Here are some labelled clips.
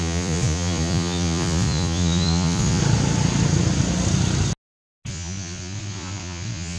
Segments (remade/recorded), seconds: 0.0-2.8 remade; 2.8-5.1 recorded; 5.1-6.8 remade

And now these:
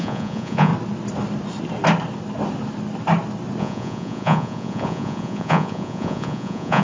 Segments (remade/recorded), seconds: 0.0-0.7 remade; 0.7-3.6 recorded; 3.6-6.8 remade